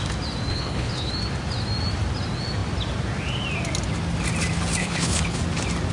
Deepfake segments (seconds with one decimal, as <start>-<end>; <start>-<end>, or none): 0.5-1.1; 4.8-5.4